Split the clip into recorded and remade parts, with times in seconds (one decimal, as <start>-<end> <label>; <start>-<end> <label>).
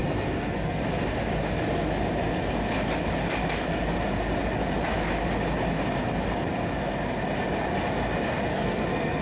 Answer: 0.0-0.8 remade; 0.8-8.5 recorded; 8.5-9.2 remade